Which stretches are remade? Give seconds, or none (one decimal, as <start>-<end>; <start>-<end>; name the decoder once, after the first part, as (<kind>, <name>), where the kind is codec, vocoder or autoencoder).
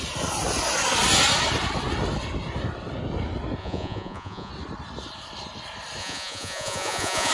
3.6-4.5 (vocoder, Vocos); 6.0-7.3